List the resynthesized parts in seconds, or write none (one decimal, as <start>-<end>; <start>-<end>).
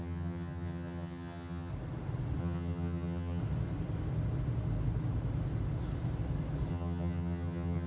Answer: 0.0-1.7; 2.4-3.4; 6.7-7.9